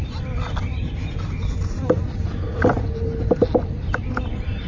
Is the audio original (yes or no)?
yes